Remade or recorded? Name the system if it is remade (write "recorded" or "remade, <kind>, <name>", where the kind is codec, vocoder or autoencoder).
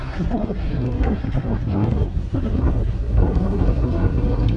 remade, codec, SNAC